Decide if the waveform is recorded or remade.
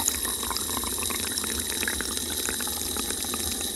recorded